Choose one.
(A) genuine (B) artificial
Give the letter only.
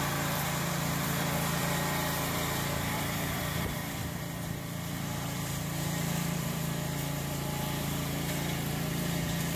B